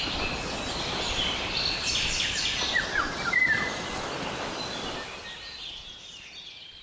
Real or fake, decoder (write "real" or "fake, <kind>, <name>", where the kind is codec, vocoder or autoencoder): real